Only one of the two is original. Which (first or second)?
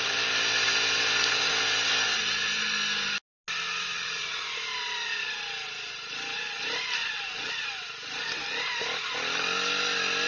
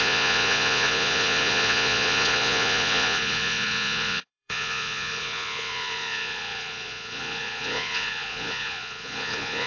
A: first